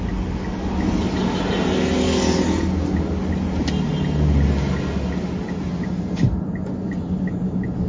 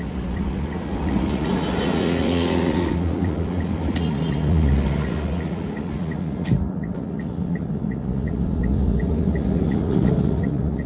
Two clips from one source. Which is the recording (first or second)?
first